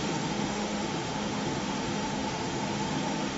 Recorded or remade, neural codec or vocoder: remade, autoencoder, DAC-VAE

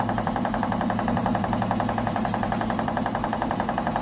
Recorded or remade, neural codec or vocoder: remade, vocoder, BigVGAN v2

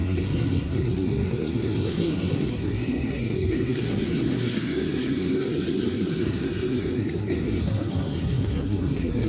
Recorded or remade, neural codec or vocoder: remade, codec, SNAC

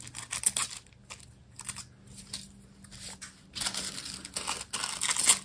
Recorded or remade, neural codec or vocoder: recorded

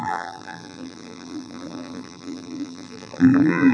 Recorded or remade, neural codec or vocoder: remade, vocoder, BigVGAN v2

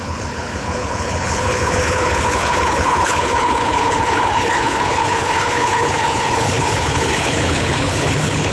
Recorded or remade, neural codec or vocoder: remade, codec, HILCodec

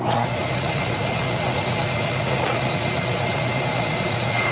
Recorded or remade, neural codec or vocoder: remade, vocoder, Vocos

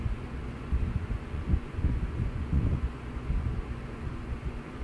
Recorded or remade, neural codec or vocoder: remade, vocoder, Vocos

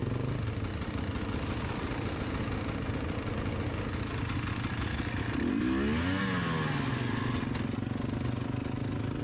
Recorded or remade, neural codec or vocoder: recorded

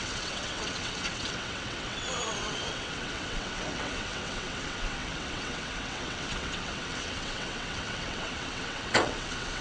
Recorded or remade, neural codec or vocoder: remade, vocoder, WaveNeXt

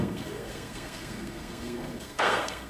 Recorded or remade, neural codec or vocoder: remade, codec, SNAC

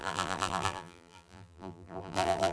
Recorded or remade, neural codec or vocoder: remade, vocoder, BigVGAN v2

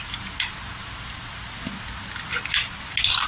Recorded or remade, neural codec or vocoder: recorded